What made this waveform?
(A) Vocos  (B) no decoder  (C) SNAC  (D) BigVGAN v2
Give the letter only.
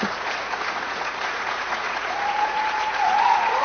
A